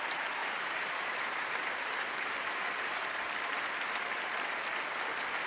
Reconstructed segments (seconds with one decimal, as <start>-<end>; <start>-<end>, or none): 0.4-3.7